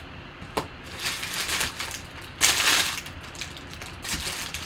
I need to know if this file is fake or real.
real